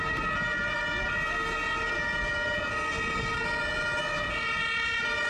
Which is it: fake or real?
real